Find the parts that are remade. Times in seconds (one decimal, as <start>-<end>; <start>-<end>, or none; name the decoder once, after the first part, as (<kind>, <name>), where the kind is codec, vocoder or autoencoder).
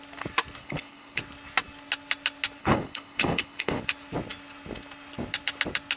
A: 0.6-1.2 (codec, HILCodec); 2.6-3.8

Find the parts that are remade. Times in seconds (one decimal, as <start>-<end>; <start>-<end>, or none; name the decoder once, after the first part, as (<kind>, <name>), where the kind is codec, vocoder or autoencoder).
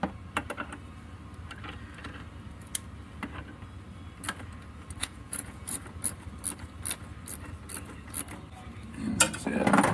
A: 5.0-5.8 (vocoder, Vocos)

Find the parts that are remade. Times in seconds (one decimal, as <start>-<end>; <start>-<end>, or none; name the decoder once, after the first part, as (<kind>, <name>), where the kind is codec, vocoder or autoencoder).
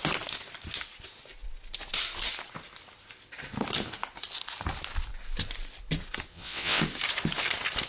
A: 6.3-6.8 (vocoder, WaveNeXt)